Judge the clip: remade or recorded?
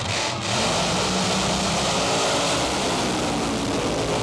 recorded